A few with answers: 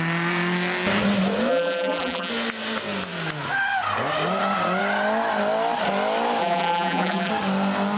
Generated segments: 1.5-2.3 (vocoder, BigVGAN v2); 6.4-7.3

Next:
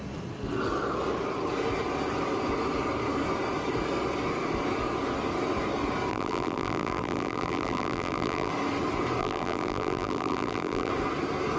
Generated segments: 6.1-8.5 (vocoder, BigVGAN v2); 9.2-10.9

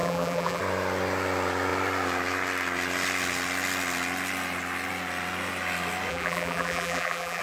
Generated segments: 0.0-0.6 (vocoder, BigVGAN v2); 6.1-7.4

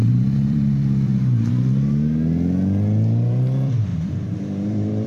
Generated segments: 0.0-1.5 (vocoder, BigVGAN v2); 3.9-5.1

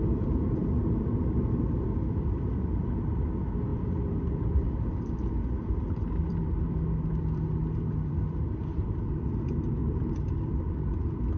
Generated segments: 0.0-9.8 (vocoder, BigVGAN v2); 10.6-11.4

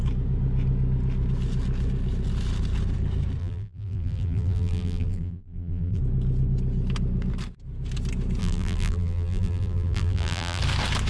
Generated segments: 3.4-6.0 (vocoder, BigVGAN v2); 8.4-10.6

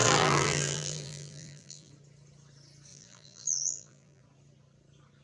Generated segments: 0.0-1.9 (vocoder, BigVGAN v2); 2.9-4.2

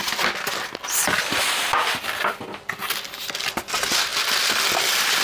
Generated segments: 1.4-2.8 (vocoder, BigVGAN v2); 3.4-4.1; 4.7-5.2